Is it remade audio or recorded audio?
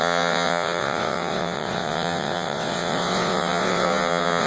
remade